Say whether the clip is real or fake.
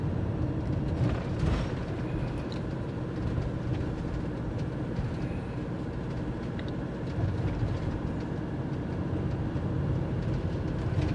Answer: real